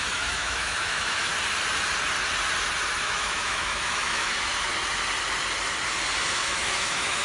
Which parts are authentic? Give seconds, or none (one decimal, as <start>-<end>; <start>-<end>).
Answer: 1.3-3.0; 4.7-6.3